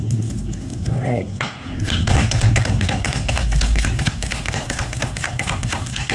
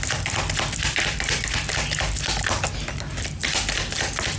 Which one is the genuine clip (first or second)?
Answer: second